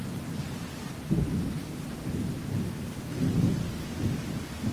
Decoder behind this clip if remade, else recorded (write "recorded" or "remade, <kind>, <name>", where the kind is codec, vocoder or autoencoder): recorded